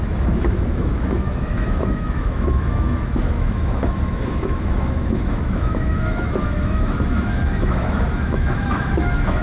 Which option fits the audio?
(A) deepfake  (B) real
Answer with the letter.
A